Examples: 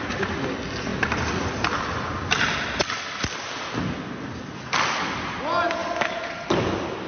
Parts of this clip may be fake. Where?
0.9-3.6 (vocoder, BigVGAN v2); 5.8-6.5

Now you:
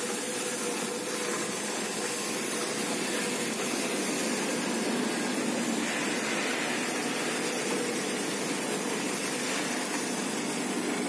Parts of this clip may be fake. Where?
none

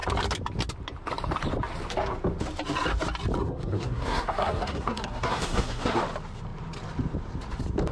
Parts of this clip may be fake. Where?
3.4-6.0 (codec, SNAC)

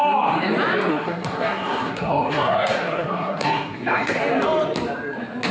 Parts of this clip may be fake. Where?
0.9-4.2 (codec, SNAC)

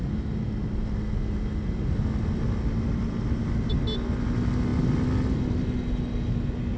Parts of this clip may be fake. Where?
none

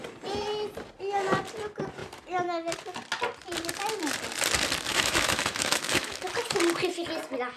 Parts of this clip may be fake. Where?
4.9-6.3 (autoencoder, DAC-VAE)

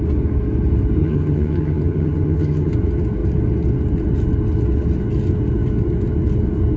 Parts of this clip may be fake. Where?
1.0-2.7 (vocoder, HiFi-GAN)

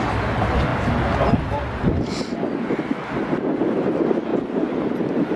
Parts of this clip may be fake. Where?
none